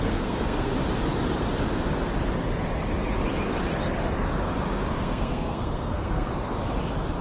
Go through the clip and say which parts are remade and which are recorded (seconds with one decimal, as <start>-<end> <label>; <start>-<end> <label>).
0.0-0.7 remade; 0.7-5.0 recorded; 5.0-6.3 remade; 6.3-7.2 recorded